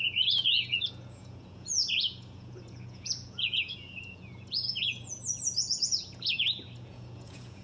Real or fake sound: fake